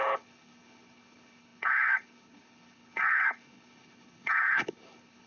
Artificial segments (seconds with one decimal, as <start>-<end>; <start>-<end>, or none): 0.0-5.3